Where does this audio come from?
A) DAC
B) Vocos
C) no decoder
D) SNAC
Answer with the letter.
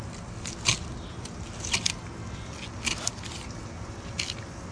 C